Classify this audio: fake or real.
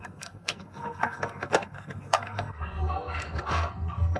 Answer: fake